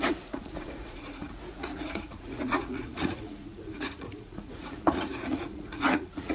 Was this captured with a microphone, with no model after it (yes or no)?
no